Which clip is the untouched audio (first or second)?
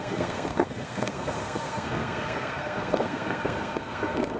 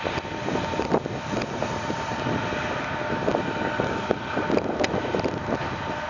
second